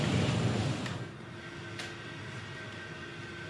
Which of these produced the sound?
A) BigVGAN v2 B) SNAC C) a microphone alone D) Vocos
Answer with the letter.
C